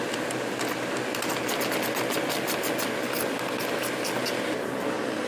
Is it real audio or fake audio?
real